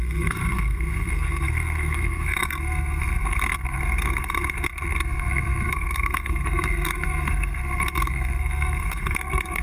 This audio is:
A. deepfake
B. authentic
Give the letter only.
A